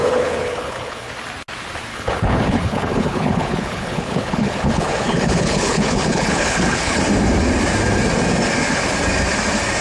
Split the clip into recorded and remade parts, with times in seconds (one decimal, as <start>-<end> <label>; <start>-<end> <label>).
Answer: 0.0-1.1 remade; 1.1-1.9 recorded; 1.9-7.0 remade; 7.0-9.8 recorded